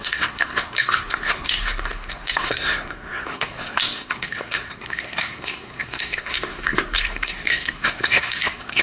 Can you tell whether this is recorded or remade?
remade